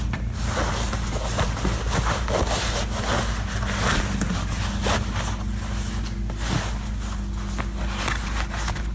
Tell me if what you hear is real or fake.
real